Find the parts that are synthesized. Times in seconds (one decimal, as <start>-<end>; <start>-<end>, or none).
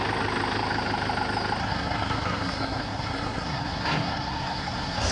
1.6-5.1